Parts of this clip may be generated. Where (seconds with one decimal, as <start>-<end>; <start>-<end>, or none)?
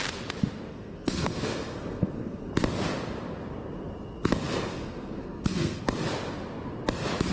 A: 0.7-2.5; 4.7-5.8